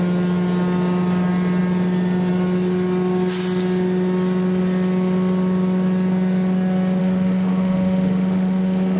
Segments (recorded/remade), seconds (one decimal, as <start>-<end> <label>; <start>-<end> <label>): 0.0-7.0 recorded; 7.0-9.0 remade